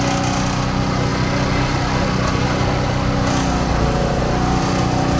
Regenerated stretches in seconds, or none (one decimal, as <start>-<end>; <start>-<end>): none